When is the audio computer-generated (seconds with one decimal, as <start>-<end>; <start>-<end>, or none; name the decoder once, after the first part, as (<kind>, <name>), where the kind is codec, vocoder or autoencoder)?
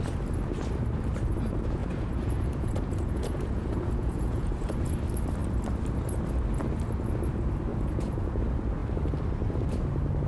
1.8-4.9 (vocoder, Vocos); 7.7-8.4